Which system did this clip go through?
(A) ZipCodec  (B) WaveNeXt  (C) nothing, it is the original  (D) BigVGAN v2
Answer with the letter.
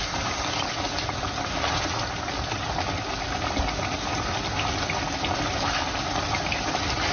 C